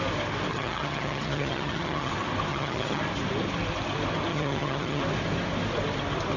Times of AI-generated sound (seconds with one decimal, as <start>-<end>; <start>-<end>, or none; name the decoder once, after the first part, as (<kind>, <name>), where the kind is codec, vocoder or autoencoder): 0.5-2.1 (vocoder, HiFi-GAN); 2.5-3.0; 4.3-5.0